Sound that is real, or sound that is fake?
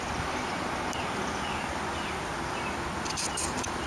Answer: real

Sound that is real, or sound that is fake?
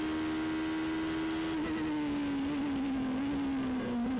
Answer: real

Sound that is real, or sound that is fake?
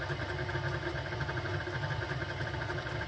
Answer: real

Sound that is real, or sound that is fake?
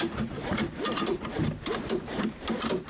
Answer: fake